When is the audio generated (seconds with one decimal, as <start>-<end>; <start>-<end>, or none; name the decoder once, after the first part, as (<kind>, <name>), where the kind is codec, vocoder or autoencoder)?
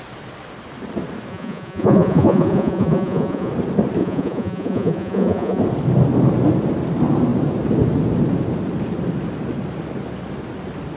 1.3-3.5 (vocoder, Vocos); 4.0-5.6